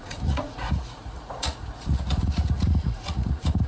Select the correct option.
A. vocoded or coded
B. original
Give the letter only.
A